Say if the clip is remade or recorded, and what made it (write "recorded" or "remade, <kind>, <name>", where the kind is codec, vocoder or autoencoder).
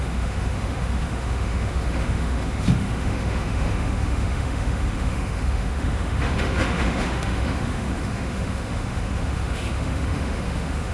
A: remade, autoencoder, DAC-VAE